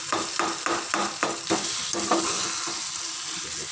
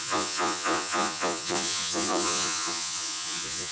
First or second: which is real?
first